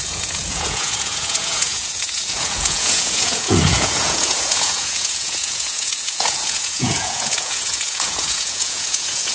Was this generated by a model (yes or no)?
yes